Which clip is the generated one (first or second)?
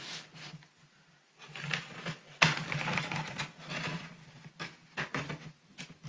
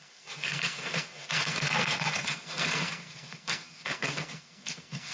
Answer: second